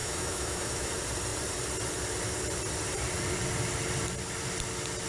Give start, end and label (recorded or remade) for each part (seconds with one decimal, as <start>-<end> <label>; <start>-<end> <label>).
0.0-0.9 remade; 0.9-5.1 recorded